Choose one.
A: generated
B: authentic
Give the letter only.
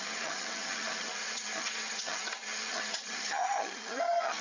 A